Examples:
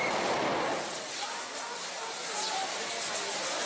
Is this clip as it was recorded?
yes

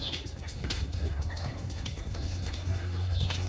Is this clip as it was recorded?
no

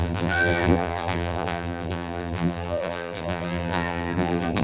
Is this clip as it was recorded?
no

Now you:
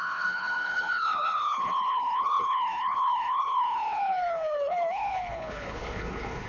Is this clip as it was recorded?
no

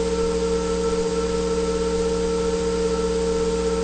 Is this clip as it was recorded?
yes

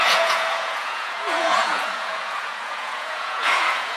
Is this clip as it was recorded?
no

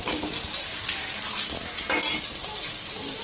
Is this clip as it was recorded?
yes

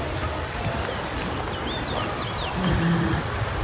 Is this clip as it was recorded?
yes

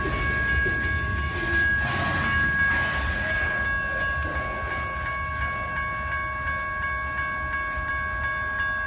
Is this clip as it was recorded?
yes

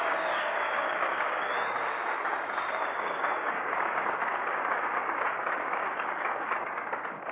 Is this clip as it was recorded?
no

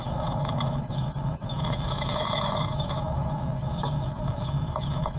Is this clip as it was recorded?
no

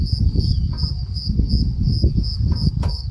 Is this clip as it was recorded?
no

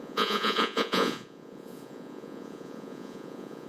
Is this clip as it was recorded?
no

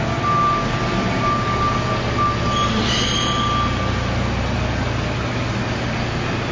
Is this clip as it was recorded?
yes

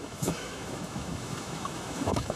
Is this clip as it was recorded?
no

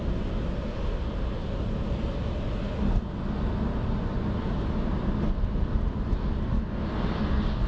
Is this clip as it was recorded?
no